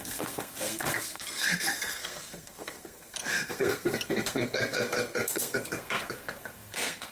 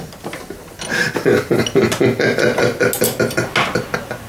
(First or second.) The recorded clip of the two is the second